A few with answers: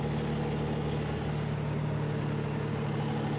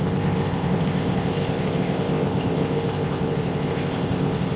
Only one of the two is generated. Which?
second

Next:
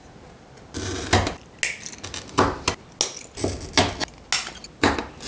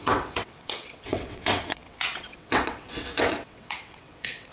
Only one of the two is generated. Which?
second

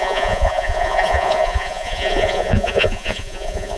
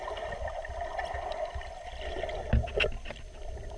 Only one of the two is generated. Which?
first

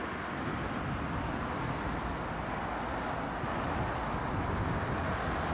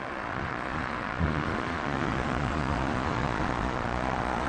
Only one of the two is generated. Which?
second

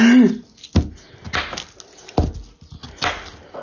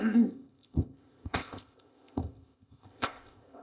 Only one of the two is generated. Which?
second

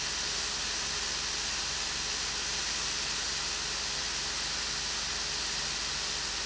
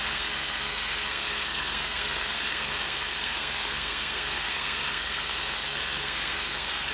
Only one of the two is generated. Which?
second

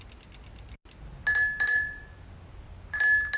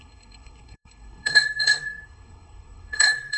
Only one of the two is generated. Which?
second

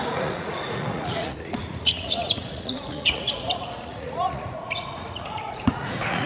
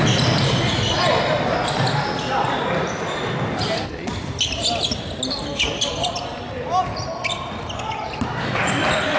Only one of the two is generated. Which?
first